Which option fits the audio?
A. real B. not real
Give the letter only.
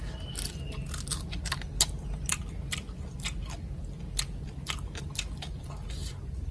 A